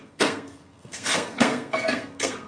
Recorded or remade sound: remade